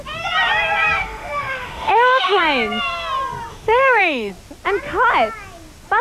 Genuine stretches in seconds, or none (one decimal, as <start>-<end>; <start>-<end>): 0.0-1.0; 2.4-3.5; 4.3-6.0